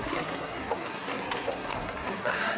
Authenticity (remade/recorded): remade